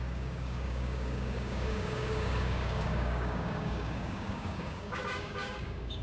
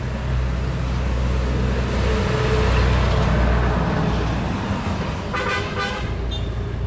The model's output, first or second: first